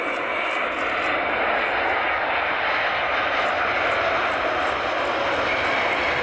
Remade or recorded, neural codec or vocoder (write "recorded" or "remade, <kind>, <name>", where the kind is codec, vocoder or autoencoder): recorded